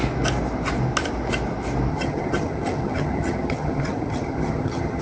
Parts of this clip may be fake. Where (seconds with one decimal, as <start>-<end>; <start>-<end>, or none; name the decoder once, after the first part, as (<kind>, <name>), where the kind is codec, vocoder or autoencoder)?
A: 1.9-5.0 (vocoder, HiFi-GAN)